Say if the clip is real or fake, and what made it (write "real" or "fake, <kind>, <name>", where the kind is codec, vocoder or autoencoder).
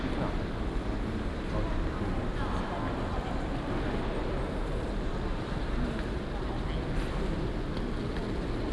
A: real